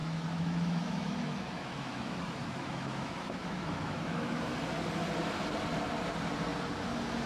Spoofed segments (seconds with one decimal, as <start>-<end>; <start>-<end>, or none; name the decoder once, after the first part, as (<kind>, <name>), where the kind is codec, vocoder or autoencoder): 0.0-4.4 (autoencoder, DAC-VAE)